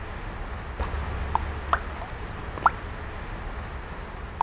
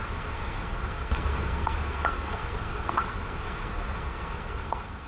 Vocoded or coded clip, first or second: second